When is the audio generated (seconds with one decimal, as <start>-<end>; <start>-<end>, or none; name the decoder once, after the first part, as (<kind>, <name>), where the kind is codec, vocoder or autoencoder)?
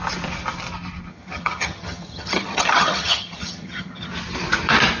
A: 1.1-4.1 (vocoder, HiFi-GAN)